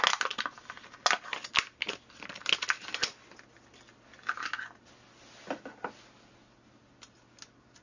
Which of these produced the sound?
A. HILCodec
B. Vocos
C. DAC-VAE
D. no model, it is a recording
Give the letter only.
D